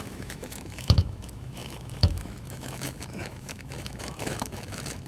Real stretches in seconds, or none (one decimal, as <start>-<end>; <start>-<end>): none